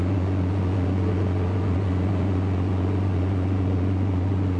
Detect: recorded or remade remade